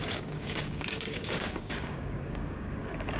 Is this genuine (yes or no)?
no